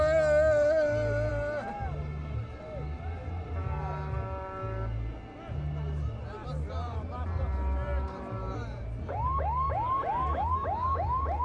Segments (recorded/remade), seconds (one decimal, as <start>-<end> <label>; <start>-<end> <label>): 0.0-11.4 recorded